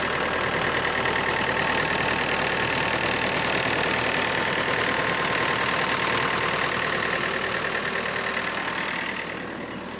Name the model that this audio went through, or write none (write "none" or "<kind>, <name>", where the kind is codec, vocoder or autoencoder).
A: none